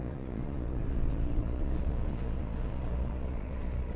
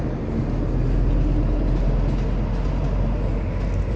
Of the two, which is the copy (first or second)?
first